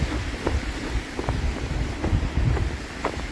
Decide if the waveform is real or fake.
fake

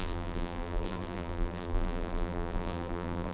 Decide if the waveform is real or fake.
fake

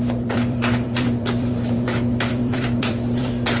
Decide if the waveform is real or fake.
fake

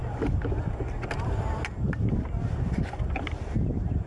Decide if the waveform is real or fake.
real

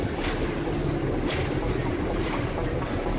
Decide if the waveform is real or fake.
fake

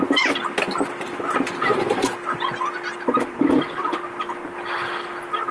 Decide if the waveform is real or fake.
real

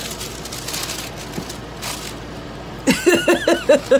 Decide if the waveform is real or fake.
real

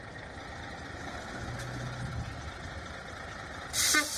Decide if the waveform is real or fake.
real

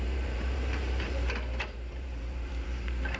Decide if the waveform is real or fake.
fake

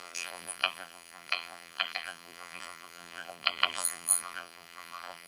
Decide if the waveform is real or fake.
fake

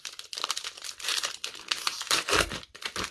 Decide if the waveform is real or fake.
fake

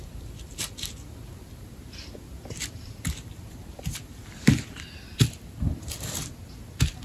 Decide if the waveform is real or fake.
fake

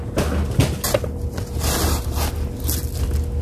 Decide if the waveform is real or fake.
real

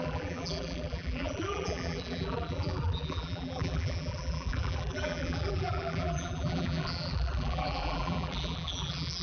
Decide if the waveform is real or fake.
fake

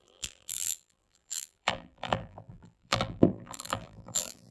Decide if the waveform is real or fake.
fake